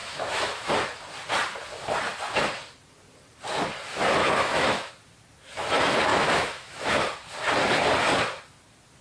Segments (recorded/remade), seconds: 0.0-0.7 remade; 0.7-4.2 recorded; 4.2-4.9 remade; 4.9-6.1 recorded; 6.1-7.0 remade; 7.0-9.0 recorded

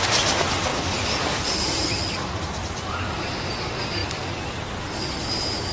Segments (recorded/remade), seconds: 0.0-0.7 recorded; 0.7-3.1 remade; 3.1-5.7 recorded